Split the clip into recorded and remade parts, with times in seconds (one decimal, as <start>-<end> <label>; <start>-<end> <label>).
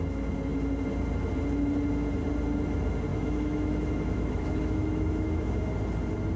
0.0-3.1 recorded; 3.1-5.7 remade; 5.7-6.4 recorded